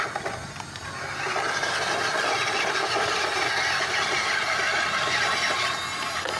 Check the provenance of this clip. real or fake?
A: real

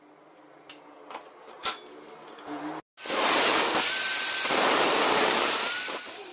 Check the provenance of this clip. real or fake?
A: real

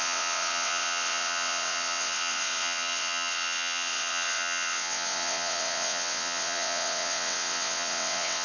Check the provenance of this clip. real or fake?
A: fake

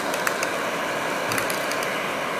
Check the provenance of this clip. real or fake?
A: real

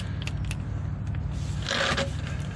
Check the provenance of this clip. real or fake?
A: real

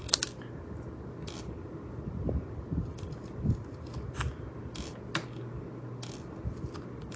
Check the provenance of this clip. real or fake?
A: real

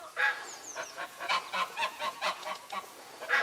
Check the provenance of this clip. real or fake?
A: fake